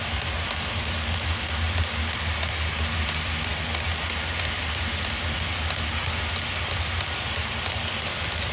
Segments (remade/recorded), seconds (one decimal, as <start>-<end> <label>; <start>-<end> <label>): 0.0-3.5 recorded; 3.5-5.1 remade; 5.1-8.5 recorded